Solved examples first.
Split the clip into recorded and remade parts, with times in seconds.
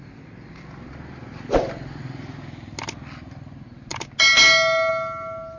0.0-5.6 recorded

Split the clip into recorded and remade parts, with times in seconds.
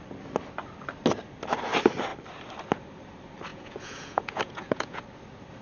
0.0-3.5 recorded; 3.5-5.0 remade; 5.0-5.6 recorded